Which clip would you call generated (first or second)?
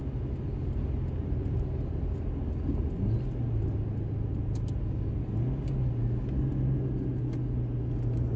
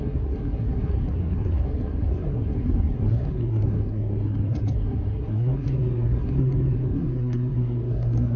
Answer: second